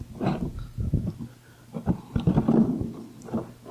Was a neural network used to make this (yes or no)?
no